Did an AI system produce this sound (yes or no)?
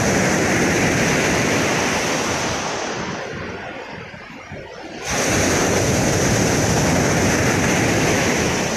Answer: no